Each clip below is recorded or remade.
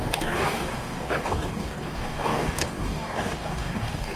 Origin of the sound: remade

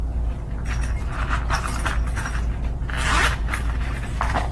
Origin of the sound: recorded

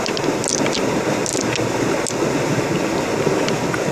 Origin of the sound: recorded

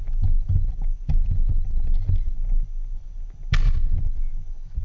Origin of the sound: recorded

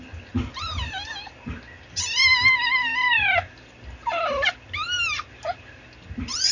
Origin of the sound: recorded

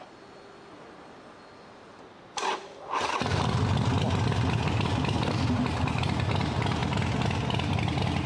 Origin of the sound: recorded